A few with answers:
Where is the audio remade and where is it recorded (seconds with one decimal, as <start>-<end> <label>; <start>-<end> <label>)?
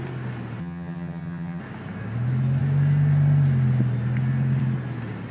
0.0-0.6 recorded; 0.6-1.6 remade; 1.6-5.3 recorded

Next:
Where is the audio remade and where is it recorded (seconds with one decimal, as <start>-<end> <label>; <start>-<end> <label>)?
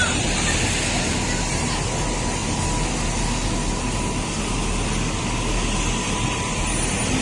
0.0-7.2 recorded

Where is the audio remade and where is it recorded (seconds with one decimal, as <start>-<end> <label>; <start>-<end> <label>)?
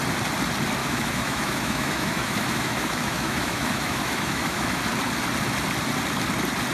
0.0-0.8 recorded; 0.8-4.8 remade; 4.8-6.7 recorded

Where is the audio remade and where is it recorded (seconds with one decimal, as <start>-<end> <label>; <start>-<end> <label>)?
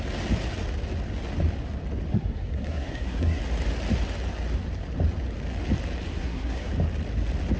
0.0-2.1 recorded; 2.1-3.4 remade; 3.4-6.1 recorded; 6.1-6.7 remade; 6.7-7.6 recorded